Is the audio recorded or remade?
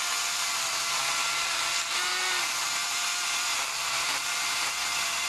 recorded